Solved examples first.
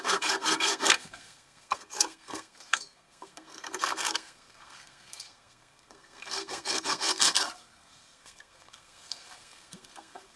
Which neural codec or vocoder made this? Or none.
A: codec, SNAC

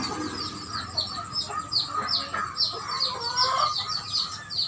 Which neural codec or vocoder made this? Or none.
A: none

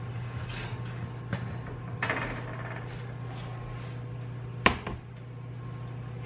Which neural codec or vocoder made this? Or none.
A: none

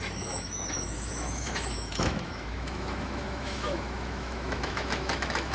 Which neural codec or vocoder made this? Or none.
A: autoencoder, DAC-VAE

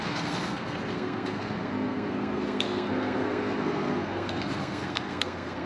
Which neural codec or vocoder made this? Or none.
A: codec, SNAC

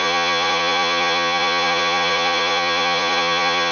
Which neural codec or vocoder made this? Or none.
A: vocoder, Vocos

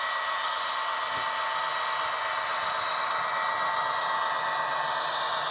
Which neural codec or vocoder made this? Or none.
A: none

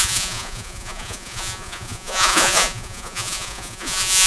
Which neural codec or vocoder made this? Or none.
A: vocoder, Vocos